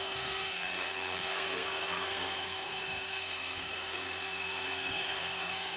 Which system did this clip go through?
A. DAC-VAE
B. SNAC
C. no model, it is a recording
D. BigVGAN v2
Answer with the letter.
B